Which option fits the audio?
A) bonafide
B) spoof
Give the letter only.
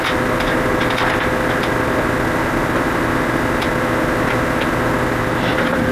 A